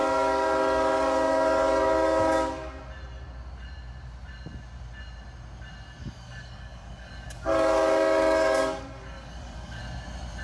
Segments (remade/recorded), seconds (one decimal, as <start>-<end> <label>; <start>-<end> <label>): 0.0-2.8 remade; 2.8-6.0 recorded; 6.0-9.8 remade; 9.8-10.4 recorded